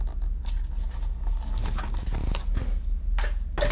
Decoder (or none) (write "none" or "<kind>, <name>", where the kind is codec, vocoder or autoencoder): none